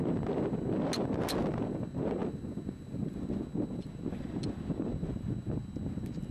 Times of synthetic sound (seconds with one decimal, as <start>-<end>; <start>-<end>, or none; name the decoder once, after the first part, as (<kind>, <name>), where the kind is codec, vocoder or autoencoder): none